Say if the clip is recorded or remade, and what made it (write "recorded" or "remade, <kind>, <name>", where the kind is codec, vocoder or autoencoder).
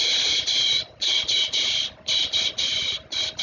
recorded